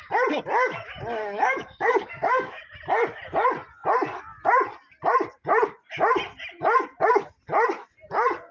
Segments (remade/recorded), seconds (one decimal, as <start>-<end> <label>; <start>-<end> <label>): 0.0-1.2 recorded; 1.2-2.6 remade; 2.6-8.5 recorded